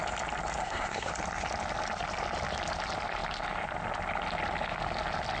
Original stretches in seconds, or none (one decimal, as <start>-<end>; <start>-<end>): 0.0-0.6; 1.1-5.4